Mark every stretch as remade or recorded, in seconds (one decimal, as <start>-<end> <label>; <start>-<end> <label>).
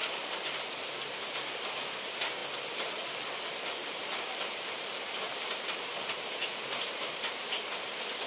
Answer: 0.0-8.3 recorded